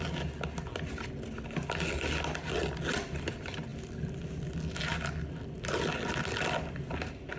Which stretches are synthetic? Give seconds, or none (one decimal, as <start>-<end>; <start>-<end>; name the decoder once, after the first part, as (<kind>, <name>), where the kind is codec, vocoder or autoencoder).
none